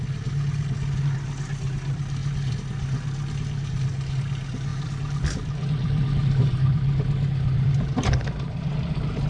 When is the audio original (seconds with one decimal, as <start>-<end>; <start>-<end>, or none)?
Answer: 0.0-4.7